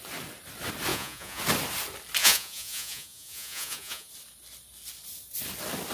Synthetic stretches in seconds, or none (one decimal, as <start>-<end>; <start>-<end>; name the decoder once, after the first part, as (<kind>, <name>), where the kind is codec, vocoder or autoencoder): 0.9-1.4 (vocoder, Vocos); 2.2-4.1